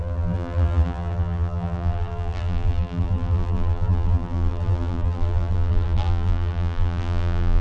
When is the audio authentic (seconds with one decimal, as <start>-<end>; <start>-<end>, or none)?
none